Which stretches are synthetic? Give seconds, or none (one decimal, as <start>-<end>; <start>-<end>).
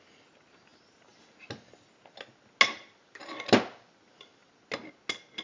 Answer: none